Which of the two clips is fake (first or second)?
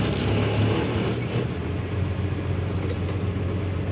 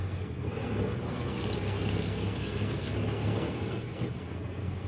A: second